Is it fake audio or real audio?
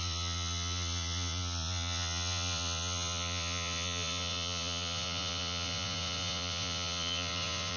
fake